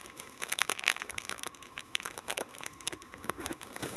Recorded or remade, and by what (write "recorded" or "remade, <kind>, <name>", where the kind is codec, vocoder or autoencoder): remade, autoencoder, DAC-VAE